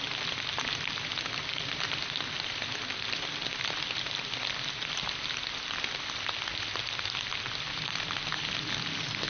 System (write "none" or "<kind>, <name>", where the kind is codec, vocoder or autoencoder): none